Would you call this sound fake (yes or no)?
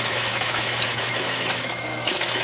yes